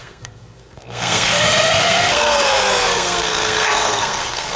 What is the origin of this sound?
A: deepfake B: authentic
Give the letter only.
A